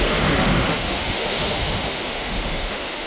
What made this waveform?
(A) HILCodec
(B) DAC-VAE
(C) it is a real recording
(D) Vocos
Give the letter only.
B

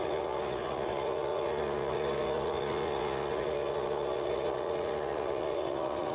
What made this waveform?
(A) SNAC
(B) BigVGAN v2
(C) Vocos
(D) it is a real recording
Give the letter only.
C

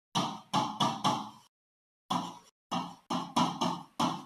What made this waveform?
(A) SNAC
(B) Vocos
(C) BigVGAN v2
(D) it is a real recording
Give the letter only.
D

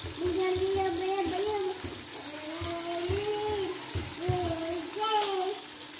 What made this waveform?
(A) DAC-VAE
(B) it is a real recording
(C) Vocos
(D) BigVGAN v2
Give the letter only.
B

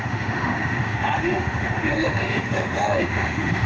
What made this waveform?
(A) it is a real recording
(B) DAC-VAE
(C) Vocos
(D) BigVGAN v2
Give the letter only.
B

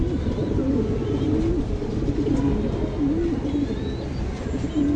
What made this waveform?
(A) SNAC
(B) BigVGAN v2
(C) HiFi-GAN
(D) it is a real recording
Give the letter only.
D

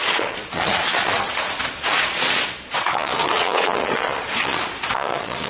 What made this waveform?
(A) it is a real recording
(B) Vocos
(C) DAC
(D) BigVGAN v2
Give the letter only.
B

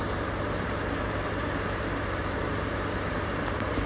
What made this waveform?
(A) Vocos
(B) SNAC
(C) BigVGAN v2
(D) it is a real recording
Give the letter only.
C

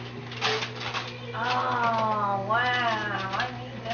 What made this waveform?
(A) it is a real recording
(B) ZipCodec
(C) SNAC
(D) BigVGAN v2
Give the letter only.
A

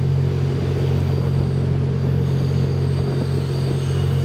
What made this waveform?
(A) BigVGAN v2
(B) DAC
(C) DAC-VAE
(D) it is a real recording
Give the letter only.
D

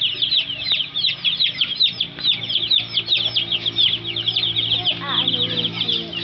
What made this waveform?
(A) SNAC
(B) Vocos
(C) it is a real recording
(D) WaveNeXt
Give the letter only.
C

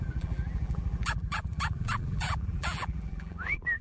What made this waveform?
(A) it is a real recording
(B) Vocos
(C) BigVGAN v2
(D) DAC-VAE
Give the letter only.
C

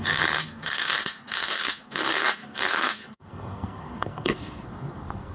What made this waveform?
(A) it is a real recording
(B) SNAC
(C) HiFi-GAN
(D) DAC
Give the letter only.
B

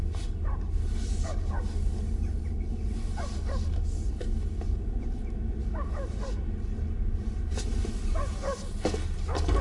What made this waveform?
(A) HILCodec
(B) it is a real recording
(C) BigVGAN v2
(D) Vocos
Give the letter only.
B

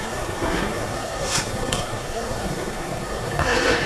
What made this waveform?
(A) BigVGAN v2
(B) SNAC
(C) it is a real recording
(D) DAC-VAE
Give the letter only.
B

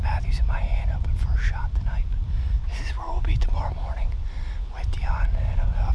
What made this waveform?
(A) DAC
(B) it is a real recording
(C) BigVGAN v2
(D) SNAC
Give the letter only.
B